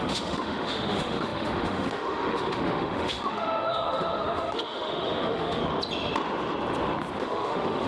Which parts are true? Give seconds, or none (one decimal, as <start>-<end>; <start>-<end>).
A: 5.6-7.2